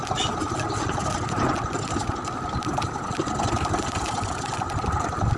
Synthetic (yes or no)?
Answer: no